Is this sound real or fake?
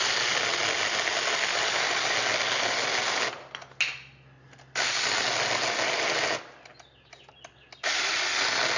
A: real